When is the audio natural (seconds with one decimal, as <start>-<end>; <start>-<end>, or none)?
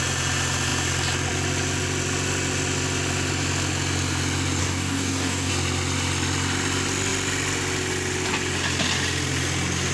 0.0-4.6; 5.5-9.9